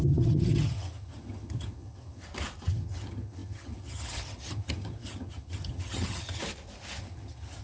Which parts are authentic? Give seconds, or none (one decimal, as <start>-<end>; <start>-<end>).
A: 2.2-2.7; 6.4-7.0